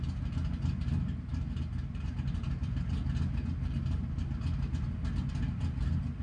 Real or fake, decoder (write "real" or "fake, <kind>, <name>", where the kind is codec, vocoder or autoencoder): real